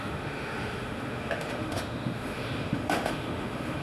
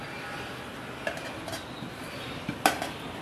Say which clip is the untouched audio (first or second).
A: second